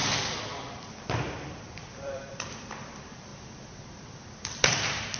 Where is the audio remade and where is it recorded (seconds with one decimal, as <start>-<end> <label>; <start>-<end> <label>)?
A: 0.0-5.2 remade